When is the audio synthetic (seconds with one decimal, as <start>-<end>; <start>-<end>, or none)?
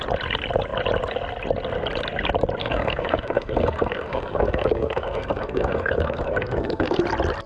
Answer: 2.6-7.0